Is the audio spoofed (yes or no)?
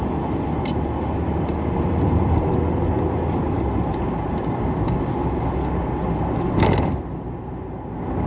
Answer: no